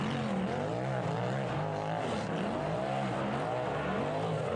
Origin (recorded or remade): recorded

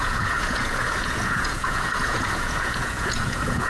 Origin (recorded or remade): remade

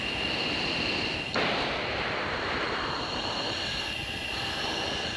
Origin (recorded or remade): recorded